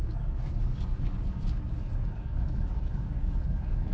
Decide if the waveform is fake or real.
fake